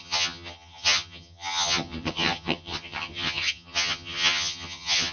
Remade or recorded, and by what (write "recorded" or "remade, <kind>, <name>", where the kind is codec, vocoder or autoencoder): remade, vocoder, HiFi-GAN